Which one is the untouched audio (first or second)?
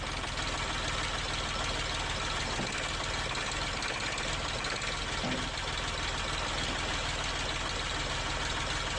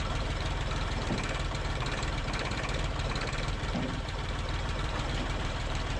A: first